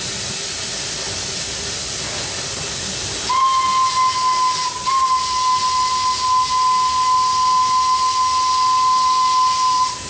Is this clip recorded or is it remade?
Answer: recorded